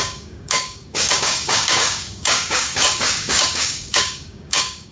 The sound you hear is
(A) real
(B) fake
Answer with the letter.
B